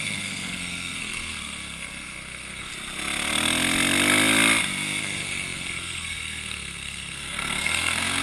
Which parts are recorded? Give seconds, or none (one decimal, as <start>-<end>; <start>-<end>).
2.7-5.0